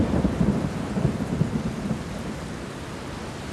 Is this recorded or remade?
recorded